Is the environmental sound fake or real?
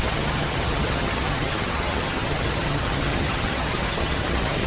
fake